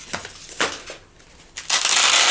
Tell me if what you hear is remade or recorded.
recorded